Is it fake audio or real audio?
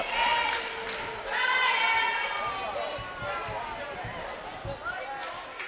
real